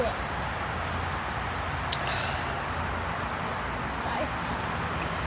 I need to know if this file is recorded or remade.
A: recorded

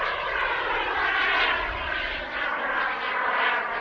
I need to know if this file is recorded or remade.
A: recorded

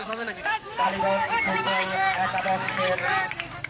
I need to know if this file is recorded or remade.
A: remade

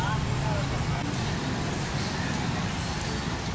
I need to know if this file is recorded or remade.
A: recorded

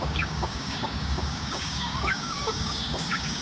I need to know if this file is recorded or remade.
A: remade